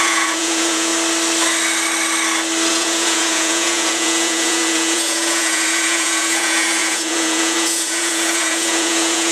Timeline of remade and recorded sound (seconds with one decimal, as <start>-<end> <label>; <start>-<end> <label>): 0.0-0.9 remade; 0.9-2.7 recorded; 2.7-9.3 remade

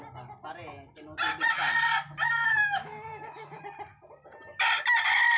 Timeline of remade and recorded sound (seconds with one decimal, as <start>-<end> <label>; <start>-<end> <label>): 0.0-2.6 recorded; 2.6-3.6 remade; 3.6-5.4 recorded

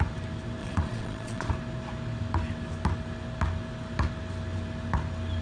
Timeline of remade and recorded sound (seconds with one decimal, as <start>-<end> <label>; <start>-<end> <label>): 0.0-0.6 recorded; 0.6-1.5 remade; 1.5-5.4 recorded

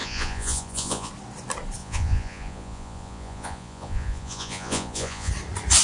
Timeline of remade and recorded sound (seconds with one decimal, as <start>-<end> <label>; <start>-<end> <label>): 0.0-1.1 remade; 1.1-1.8 recorded; 1.8-5.3 remade; 5.3-5.8 recorded